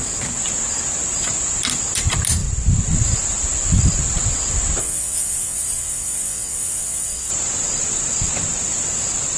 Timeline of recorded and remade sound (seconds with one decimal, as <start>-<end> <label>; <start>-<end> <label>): 0.0-4.8 recorded; 4.8-7.3 remade; 7.3-9.4 recorded